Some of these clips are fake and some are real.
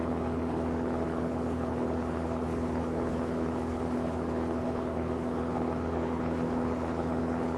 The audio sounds fake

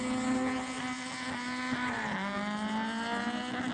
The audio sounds real